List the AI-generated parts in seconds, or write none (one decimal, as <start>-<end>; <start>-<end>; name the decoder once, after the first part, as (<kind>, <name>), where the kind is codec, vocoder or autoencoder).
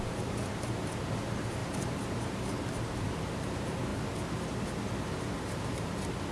0.0-3.9 (vocoder, BigVGAN v2); 5.0-6.3